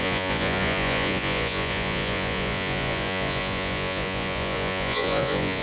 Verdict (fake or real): fake